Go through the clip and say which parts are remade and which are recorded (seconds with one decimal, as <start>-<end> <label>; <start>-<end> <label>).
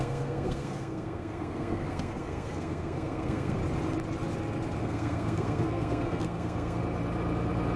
0.0-3.6 remade; 3.6-4.8 recorded; 4.8-6.8 remade; 6.8-7.8 recorded